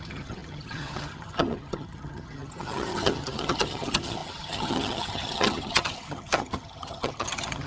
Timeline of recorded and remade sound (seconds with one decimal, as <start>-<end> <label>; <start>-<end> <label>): 0.0-7.7 remade